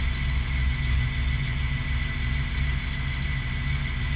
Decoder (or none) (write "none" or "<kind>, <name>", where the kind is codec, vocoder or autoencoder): none